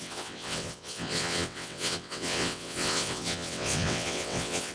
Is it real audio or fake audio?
fake